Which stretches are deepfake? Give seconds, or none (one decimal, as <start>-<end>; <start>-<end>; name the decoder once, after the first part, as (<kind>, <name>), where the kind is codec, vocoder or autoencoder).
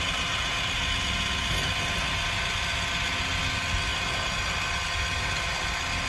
none